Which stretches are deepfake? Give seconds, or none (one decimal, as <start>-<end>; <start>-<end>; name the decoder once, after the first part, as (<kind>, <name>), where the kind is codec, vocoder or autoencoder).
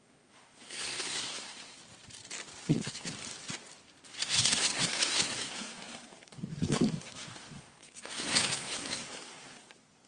0.0-1.8 (codec, SNAC); 2.6-3.1; 4.1-10.1